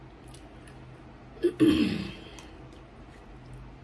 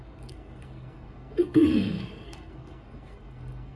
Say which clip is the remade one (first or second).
second